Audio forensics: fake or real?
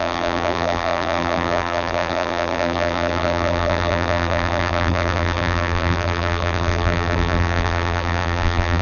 fake